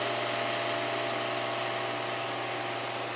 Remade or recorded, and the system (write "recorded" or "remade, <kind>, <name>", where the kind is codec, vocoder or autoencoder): recorded